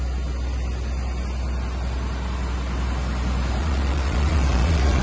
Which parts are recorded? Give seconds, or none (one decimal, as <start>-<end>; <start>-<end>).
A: 0.0-3.6